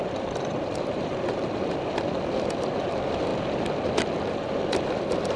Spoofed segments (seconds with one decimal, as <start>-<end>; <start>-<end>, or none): 0.0-3.3; 4.3-5.4